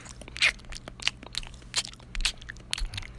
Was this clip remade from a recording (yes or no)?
no